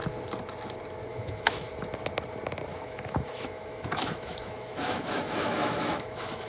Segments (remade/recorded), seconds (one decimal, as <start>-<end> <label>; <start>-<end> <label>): 0.0-1.1 recorded; 1.1-1.7 remade; 1.7-2.7 recorded; 2.7-6.5 remade